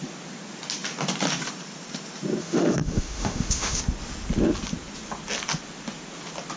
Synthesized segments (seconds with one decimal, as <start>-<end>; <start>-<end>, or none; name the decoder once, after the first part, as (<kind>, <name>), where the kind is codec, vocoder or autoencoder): 2.4-3.8 (autoencoder, DAC-VAE)